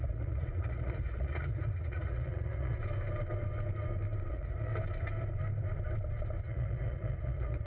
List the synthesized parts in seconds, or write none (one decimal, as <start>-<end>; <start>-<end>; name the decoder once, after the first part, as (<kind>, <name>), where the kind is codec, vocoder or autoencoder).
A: 0.0-2.8 (vocoder, Vocos); 4.3-4.7; 6.4-7.7